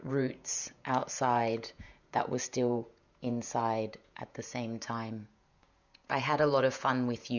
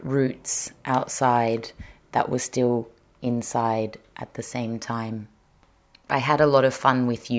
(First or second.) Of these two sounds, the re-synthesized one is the first